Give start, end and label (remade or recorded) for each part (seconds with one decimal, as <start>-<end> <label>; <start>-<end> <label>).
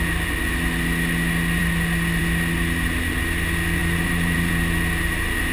0.0-3.8 recorded; 3.8-4.5 remade; 4.5-5.5 recorded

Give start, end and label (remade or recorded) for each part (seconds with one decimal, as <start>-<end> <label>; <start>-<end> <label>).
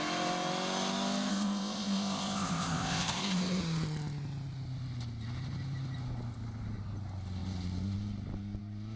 0.0-1.3 recorded; 1.3-3.6 remade; 3.6-9.0 recorded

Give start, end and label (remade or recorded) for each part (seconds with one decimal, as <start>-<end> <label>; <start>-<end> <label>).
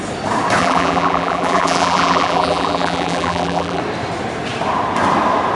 0.0-0.6 recorded; 0.6-3.8 remade; 3.8-5.6 recorded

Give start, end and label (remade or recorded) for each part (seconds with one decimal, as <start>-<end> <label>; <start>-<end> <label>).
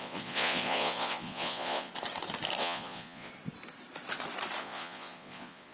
0.0-1.9 remade; 1.9-2.6 recorded; 2.6-3.3 remade; 3.3-4.6 recorded; 4.6-5.7 remade